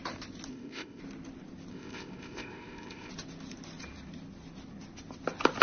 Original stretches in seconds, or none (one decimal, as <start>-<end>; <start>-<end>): 0.0-0.5; 1.0-1.7; 3.1-5.6